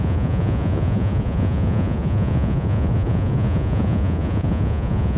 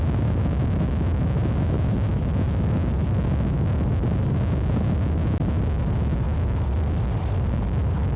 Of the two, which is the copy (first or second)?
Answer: first